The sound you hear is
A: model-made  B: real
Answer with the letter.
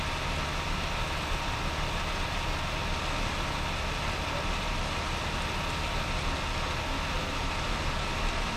B